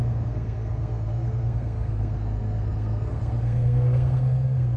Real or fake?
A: fake